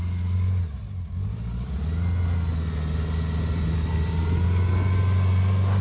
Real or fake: real